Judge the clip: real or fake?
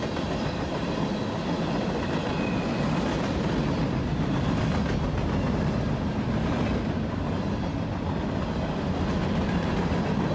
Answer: real